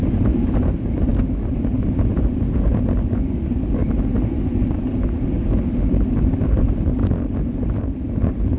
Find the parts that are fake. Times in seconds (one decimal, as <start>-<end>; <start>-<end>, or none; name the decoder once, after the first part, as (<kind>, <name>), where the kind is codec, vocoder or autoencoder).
0.0-1.1 (vocoder, BigVGAN v2); 2.1-3.8; 5.9-7.0; 7.8-8.6